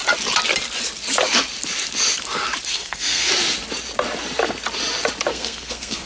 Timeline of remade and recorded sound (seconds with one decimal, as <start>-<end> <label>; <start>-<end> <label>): 0.0-2.7 recorded; 2.7-3.3 remade; 3.3-5.3 recorded; 5.3-6.1 remade